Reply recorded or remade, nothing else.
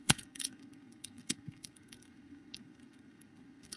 remade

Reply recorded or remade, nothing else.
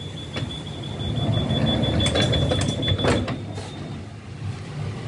recorded